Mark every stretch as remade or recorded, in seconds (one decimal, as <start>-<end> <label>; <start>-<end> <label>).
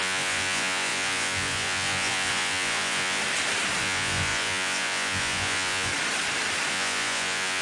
0.0-3.2 remade; 3.2-3.8 recorded; 3.8-5.9 remade; 5.9-6.7 recorded; 6.7-7.6 remade